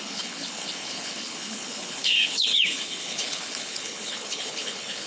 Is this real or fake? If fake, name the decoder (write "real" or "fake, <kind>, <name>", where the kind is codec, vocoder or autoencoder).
fake, codec, HILCodec